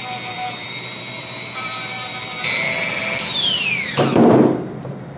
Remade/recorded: remade